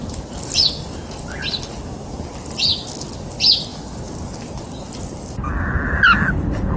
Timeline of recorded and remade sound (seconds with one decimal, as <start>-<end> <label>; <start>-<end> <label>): 0.0-6.8 recorded